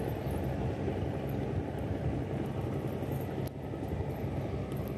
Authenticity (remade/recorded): recorded